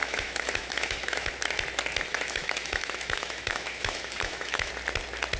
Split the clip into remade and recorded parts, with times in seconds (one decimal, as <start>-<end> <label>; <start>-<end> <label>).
0.0-1.3 remade; 1.3-2.1 recorded; 2.1-4.7 remade; 4.7-5.4 recorded